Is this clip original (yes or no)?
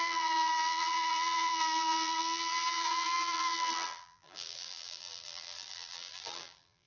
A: no